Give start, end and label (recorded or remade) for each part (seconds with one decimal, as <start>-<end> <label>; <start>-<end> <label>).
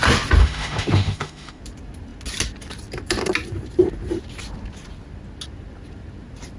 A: 0.0-0.4 recorded; 0.4-1.6 remade; 1.6-6.6 recorded